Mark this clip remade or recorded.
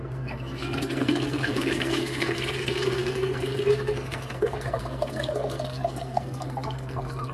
remade